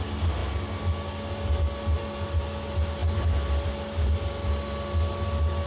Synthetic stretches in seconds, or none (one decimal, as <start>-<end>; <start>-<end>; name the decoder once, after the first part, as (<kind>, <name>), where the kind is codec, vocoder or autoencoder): none